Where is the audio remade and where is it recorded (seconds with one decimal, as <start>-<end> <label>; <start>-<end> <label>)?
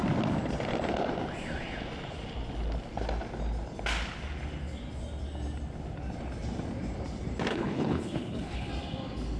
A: 0.0-7.5 recorded; 7.5-8.7 remade; 8.7-9.4 recorded